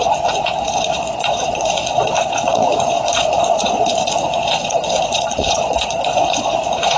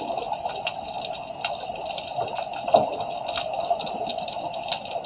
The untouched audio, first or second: second